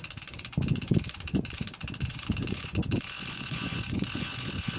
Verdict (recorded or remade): remade